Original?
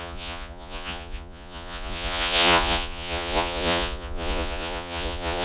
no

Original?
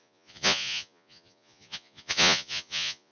no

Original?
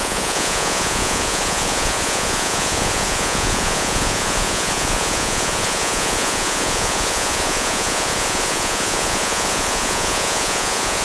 no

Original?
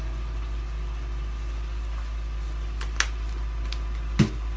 yes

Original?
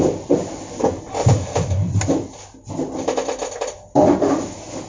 yes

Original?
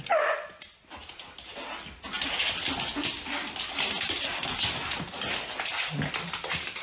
yes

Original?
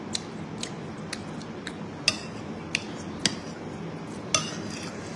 yes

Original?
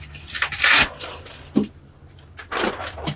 yes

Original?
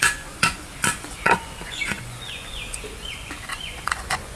no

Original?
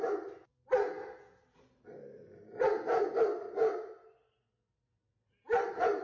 yes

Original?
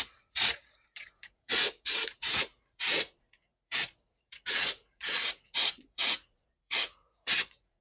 no